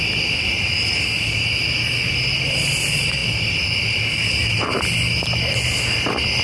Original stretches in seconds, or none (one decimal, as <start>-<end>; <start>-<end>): 0.0-6.4